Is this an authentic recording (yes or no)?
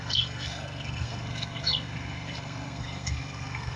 no